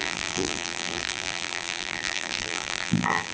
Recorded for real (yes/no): no